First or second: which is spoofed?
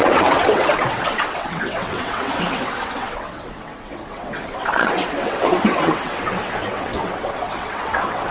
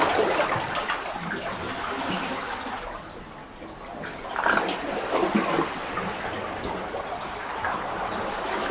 first